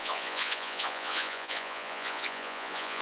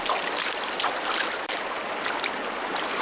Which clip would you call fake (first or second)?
first